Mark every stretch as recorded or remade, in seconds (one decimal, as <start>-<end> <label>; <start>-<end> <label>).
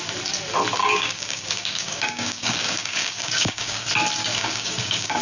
0.0-0.8 recorded; 0.8-3.9 remade; 3.9-4.3 recorded; 4.3-5.2 remade